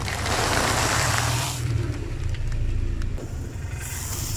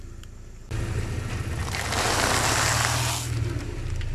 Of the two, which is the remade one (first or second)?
first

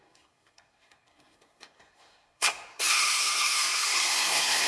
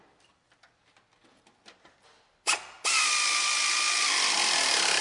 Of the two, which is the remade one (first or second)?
first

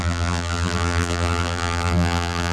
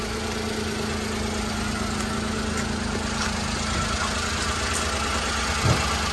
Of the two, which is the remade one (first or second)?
first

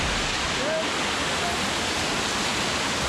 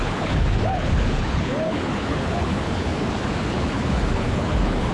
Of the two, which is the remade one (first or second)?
second